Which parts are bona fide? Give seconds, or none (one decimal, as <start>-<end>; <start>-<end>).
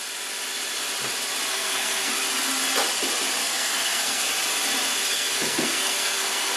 0.0-1.5; 2.1-3.4; 4.3-5.0